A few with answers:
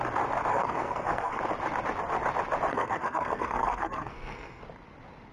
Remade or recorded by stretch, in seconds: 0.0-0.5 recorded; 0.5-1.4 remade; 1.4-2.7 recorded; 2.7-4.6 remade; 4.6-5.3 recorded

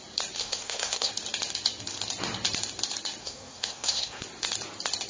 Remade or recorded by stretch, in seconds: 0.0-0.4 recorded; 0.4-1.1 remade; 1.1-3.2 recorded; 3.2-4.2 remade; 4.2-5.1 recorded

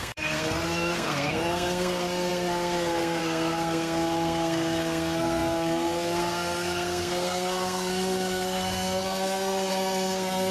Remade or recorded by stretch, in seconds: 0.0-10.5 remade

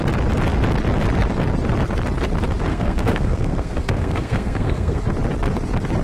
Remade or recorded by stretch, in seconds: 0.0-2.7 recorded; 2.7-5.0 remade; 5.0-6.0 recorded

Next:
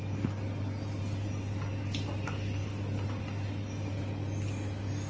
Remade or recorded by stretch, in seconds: 0.0-5.1 recorded

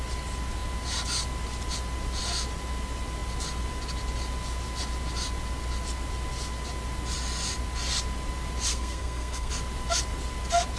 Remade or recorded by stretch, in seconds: 0.0-8.7 recorded; 8.7-9.5 remade; 9.5-10.8 recorded